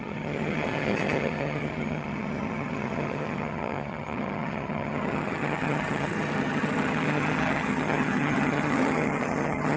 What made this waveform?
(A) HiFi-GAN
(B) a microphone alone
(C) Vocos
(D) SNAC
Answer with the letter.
A